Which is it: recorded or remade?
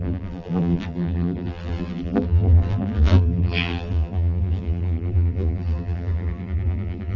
remade